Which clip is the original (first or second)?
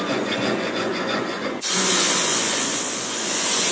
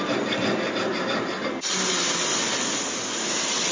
second